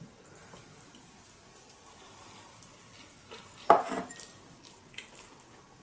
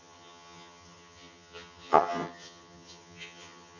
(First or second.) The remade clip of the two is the second